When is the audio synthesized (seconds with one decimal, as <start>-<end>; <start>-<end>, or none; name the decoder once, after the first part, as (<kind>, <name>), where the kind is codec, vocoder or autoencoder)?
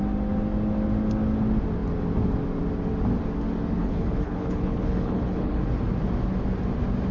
3.8-5.6 (codec, HILCodec)